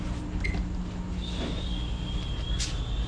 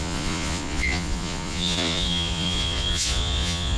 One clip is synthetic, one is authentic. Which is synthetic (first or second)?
second